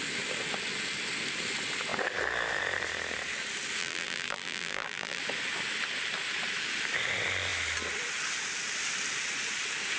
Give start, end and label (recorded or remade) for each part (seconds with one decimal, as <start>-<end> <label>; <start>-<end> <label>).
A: 0.0-3.8 recorded; 3.8-5.2 remade; 5.2-10.0 recorded